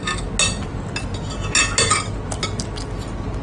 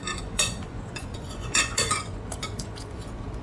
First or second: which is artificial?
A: second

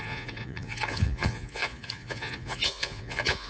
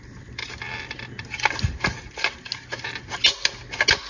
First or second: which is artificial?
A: first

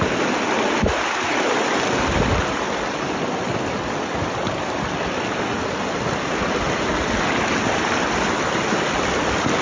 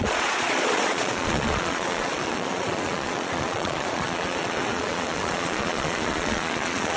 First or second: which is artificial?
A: second